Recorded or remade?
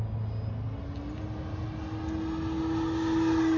recorded